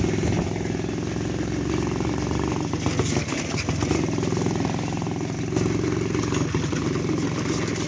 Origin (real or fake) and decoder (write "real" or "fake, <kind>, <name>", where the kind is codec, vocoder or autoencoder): real